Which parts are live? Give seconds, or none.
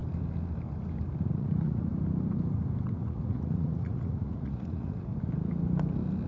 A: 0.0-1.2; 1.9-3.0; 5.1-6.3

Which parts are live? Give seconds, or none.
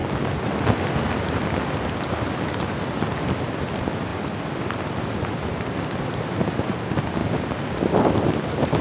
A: 0.0-4.1; 6.6-8.8